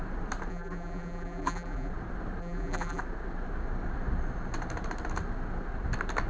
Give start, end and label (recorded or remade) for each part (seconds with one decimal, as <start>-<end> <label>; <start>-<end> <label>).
0.0-0.5 recorded; 0.5-1.9 remade; 1.9-2.4 recorded; 2.4-3.0 remade; 3.0-6.3 recorded